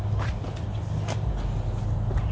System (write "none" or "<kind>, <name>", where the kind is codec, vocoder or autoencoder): none